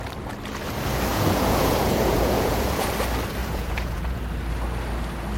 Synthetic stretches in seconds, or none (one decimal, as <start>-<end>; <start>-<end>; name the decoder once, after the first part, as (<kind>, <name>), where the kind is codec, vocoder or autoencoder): 1.1-2.9 (vocoder, Vocos); 3.4-4.2